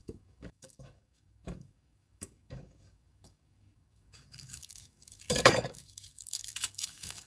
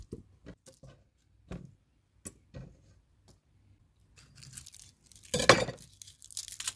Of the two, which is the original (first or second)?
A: second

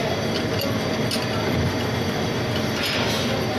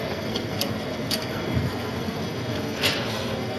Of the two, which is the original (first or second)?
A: first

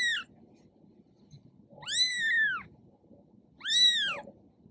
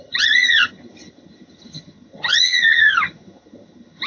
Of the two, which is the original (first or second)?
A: first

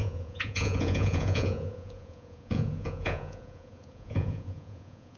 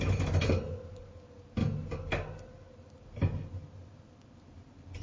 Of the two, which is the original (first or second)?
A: second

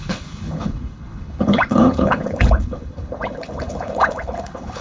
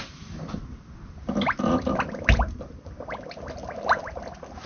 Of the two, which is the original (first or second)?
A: second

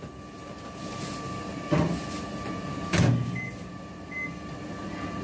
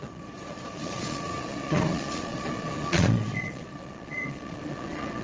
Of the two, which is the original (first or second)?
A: first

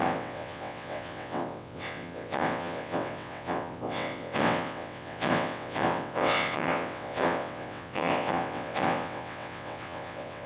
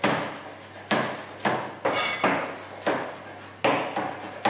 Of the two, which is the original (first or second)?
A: second